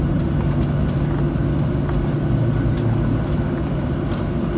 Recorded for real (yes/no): yes